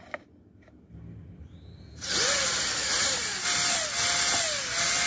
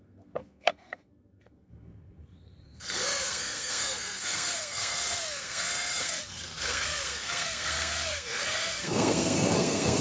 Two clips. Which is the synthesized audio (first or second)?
second